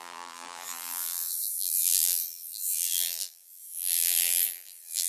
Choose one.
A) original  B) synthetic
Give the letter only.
B